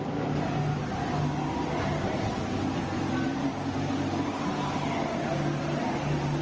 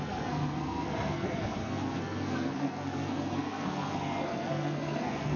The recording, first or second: first